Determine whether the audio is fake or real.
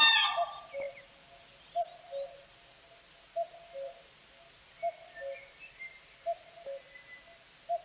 real